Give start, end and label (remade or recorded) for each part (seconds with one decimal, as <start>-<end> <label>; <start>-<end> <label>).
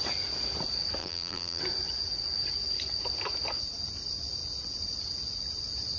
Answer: 0.0-1.0 recorded; 1.0-1.6 remade; 1.6-6.0 recorded